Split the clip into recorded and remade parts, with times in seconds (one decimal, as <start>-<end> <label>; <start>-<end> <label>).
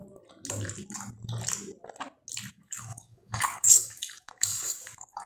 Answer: 0.0-2.5 recorded; 2.5-5.3 remade